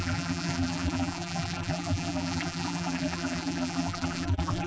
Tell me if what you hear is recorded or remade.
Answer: remade